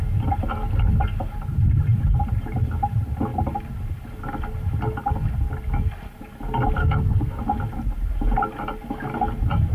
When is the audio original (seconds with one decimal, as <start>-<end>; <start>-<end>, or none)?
0.0-6.8; 7.3-9.7